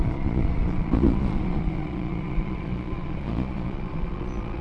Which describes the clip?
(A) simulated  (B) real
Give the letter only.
A